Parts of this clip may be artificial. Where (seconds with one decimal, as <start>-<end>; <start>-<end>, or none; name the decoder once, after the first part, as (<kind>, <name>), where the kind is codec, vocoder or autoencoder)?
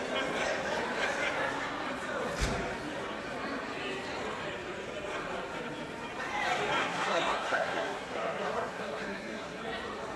6.8-9.6 (codec, SNAC)